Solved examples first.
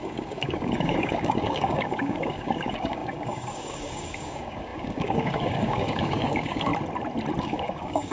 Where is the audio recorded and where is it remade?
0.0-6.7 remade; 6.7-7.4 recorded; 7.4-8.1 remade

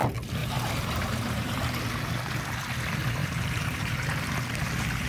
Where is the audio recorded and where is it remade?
0.0-0.4 recorded; 0.4-1.7 remade; 1.7-3.2 recorded; 3.2-4.3 remade; 4.3-5.1 recorded

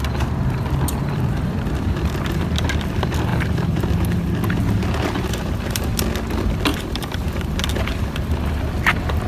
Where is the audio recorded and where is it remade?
0.0-3.3 recorded; 3.3-5.9 remade; 5.9-6.7 recorded; 6.7-7.5 remade; 7.5-9.3 recorded

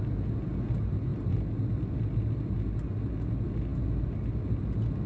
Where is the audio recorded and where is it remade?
0.0-5.1 recorded